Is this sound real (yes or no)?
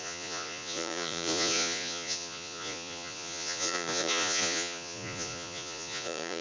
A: no